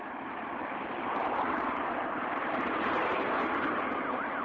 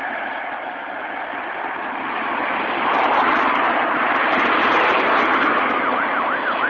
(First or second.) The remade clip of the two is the first